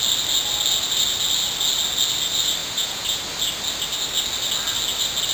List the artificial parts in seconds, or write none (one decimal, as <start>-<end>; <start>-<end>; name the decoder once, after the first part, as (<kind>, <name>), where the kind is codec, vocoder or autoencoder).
2.6-3.2 (vocoder, Vocos)

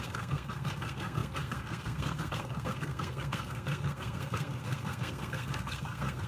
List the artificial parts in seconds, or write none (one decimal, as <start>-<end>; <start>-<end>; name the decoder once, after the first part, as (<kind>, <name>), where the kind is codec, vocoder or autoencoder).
0.0-6.3 (codec, SNAC)